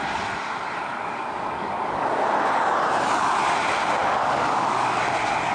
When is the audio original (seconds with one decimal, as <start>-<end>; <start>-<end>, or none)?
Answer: 0.0-0.9; 2.1-4.0; 5.0-5.5